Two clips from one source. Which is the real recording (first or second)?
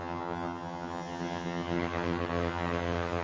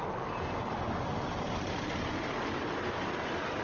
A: second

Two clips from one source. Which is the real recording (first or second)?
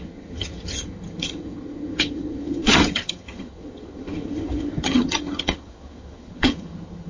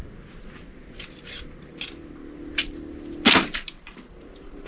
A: second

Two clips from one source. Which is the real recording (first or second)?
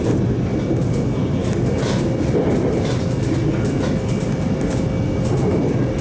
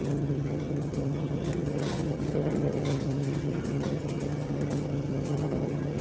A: first